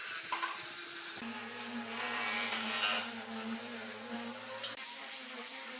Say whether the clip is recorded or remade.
recorded